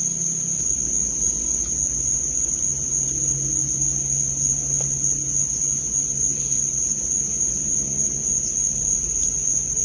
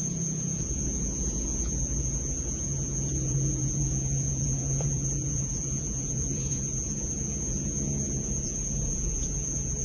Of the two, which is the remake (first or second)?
second